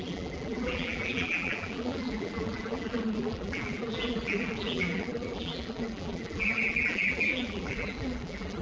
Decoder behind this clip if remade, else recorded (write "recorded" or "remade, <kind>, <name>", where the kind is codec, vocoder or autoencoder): remade, vocoder, BigVGAN v2